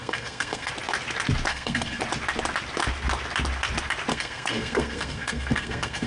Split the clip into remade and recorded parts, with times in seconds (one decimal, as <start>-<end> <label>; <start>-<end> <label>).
0.0-0.7 remade; 0.7-1.5 recorded; 1.5-2.0 remade; 2.0-4.1 recorded; 4.1-6.1 remade